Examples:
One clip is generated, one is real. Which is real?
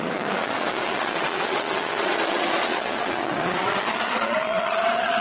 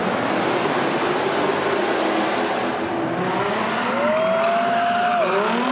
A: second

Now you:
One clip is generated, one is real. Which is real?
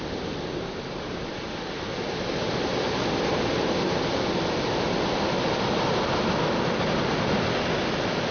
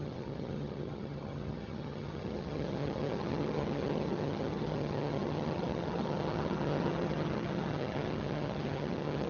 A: first